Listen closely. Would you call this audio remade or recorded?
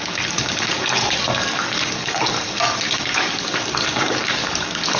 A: remade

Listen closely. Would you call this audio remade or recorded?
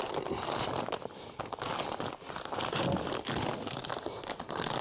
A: recorded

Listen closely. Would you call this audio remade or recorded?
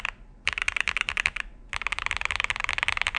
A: recorded